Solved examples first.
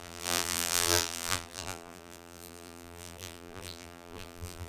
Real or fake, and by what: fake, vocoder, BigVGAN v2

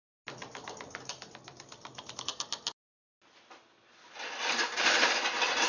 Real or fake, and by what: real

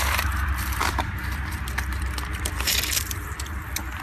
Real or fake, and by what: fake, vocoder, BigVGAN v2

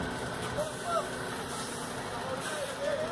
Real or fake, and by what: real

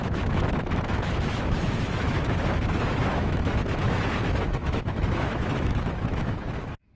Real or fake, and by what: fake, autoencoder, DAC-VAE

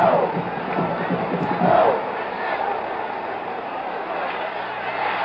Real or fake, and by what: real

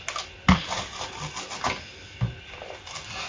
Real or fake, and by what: real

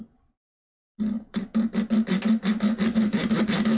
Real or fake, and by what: real